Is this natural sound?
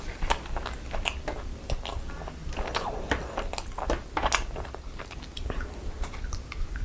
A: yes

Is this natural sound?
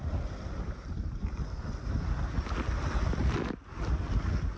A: yes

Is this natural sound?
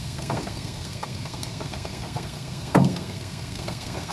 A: no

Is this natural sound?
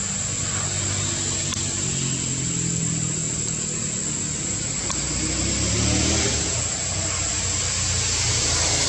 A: yes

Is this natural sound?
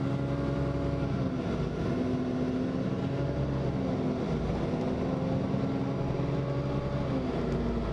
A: yes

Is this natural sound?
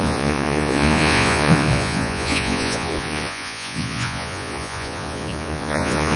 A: no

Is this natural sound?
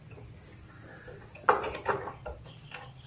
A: yes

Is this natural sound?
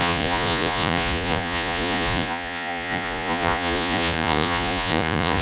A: no